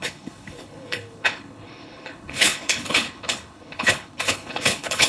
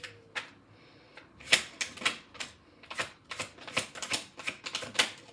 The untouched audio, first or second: second